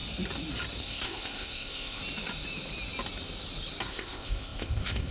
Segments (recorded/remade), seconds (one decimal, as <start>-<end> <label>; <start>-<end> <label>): 0.0-0.8 recorded; 0.8-2.0 remade; 2.0-3.9 recorded; 3.9-5.1 remade